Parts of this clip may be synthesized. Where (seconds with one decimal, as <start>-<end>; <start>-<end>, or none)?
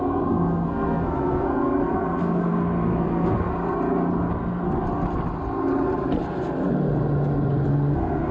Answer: 0.0-3.5; 7.7-8.3